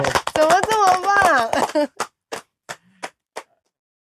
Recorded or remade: recorded